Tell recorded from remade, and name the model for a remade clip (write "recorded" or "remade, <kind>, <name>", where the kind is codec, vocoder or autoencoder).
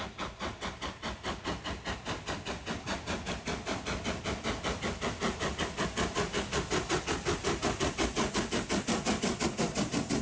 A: recorded